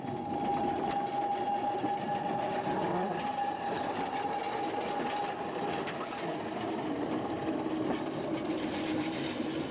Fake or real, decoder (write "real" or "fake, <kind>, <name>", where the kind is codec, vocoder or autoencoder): real